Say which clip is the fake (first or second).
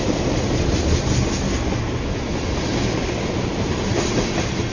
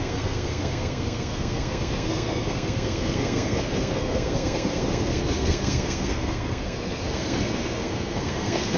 second